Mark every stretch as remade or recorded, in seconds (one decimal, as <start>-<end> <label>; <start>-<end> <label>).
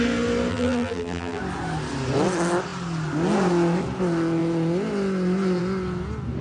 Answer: 0.0-0.5 recorded; 0.5-1.4 remade; 1.4-6.4 recorded